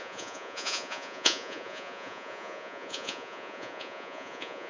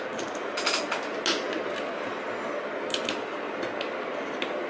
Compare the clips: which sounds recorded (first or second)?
second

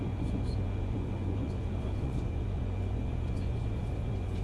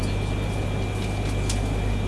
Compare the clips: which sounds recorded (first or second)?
second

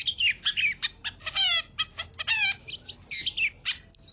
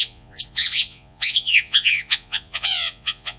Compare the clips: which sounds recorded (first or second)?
first